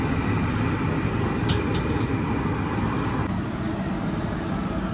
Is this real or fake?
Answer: real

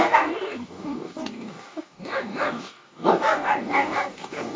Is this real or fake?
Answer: fake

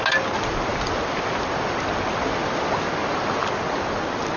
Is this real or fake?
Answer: real